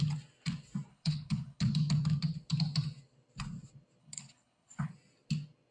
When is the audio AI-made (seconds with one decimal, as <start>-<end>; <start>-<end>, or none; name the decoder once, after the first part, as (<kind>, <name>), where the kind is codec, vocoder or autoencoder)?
0.9-1.6 (codec, HILCodec); 4.0-4.9